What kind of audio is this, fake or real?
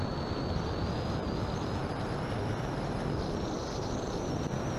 real